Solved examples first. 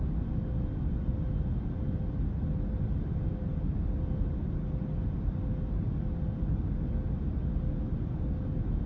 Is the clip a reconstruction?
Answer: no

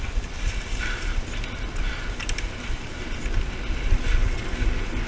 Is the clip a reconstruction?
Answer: no